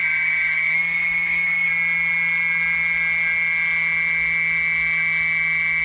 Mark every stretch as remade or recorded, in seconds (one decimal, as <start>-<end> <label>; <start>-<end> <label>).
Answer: 0.0-1.7 remade; 1.7-5.8 recorded